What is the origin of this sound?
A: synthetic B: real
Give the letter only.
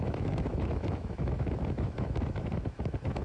A